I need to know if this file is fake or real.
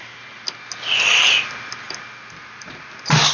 real